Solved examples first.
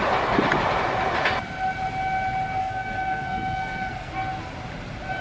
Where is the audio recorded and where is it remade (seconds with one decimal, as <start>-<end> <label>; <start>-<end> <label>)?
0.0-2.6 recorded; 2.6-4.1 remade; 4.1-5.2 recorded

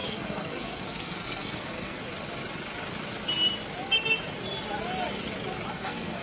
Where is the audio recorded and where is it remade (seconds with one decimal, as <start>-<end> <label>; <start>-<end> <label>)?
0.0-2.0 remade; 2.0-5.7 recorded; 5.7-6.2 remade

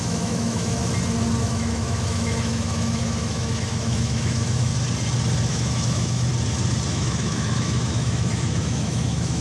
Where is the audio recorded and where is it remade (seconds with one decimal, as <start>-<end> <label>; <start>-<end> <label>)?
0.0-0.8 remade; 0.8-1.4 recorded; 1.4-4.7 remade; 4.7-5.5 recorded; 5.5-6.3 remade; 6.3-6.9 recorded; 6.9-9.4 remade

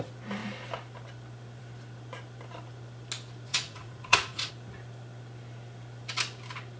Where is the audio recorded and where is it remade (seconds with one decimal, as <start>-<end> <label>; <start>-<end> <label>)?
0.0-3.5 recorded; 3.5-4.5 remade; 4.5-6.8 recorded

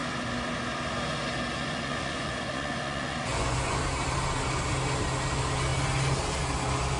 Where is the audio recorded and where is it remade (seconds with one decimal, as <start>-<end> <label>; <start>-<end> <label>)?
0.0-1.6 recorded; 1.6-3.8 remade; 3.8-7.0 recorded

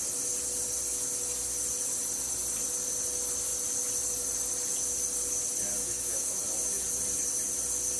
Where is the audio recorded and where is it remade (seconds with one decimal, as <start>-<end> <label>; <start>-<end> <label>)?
0.0-5.8 recorded; 5.8-6.4 remade; 6.4-8.0 recorded

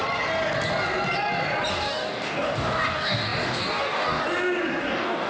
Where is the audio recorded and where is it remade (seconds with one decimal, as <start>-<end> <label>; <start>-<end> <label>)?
0.0-1.7 recorded; 1.7-4.2 remade; 4.2-4.8 recorded; 4.8-5.3 remade